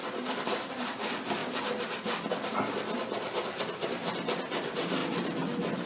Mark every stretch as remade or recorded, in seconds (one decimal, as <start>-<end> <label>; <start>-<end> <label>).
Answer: 0.0-0.7 remade; 0.7-5.9 recorded